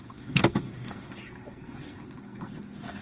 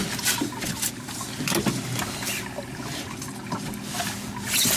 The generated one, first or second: first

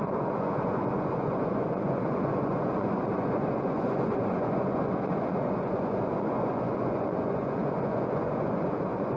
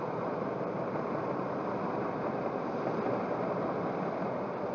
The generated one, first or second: first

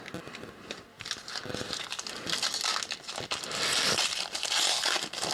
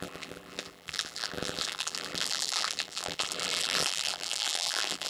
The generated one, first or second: second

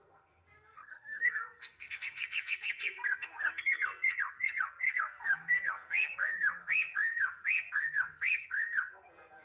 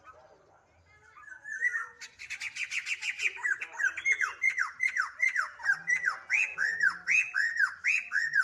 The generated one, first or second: first